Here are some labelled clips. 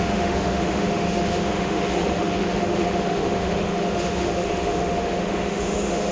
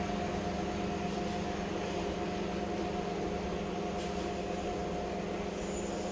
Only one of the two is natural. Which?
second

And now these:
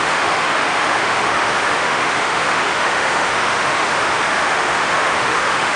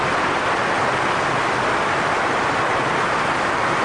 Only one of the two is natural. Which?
second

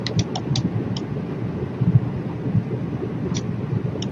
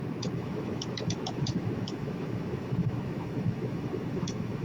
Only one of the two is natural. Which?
first